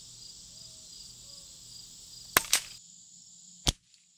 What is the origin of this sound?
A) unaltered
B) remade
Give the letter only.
A